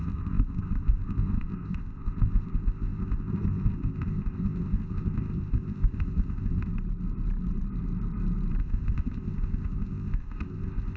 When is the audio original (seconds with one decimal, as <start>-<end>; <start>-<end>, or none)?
6.7-8.6